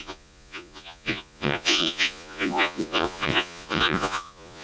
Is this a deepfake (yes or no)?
yes